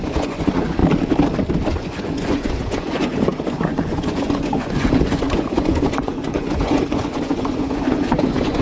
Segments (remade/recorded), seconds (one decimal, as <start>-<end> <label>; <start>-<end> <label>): 0.0-0.8 remade; 0.8-1.7 recorded; 1.7-8.6 remade

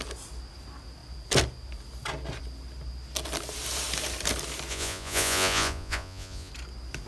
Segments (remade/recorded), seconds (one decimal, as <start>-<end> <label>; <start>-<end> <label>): 0.0-4.7 recorded; 4.7-6.5 remade; 6.5-7.1 recorded

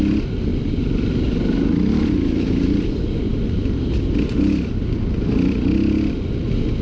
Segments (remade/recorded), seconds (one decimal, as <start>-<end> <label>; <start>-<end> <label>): 0.0-6.8 recorded

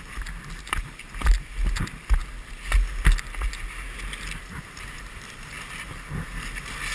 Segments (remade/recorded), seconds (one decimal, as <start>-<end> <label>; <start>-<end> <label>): 0.0-6.9 recorded

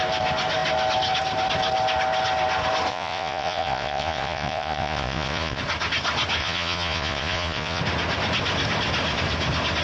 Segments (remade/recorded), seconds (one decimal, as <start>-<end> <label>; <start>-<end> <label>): 0.0-2.9 recorded; 2.9-5.6 remade; 5.6-6.4 recorded; 6.4-7.8 remade; 7.8-9.8 recorded

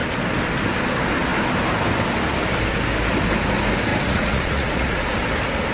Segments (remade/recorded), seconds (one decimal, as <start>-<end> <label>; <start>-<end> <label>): 0.0-3.9 recorded; 3.9-5.1 remade; 5.1-5.7 recorded

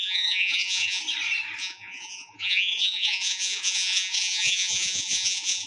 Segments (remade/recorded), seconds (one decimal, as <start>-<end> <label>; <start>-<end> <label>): 0.0-1.0 remade; 1.0-1.6 recorded; 1.6-5.7 remade